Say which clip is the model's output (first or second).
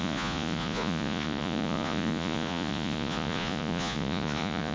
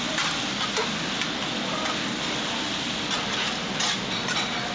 first